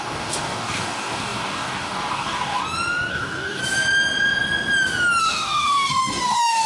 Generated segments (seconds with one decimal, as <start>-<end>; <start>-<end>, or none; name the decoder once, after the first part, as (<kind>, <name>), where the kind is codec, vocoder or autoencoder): 0.0-2.6 (codec, DAC); 3.1-3.6; 5.2-6.7